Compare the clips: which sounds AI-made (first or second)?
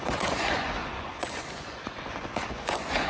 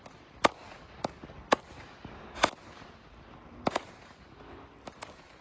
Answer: first